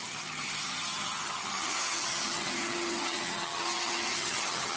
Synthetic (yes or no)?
yes